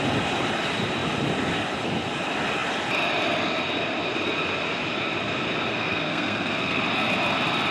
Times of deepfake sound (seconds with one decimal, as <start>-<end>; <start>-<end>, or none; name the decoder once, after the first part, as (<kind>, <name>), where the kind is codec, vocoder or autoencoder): 5.7-6.8 (codec, SNAC)